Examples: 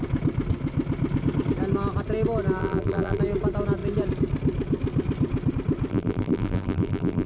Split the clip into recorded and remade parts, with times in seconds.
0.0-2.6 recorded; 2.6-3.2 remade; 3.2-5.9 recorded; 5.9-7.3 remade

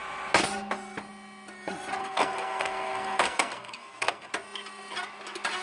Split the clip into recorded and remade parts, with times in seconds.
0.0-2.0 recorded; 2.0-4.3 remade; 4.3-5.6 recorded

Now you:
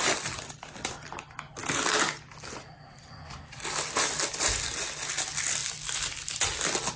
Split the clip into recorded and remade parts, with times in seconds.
0.0-7.0 recorded